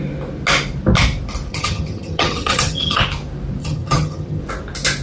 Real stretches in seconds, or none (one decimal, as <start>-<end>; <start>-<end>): 0.0-1.5; 3.0-3.6; 4.4-5.0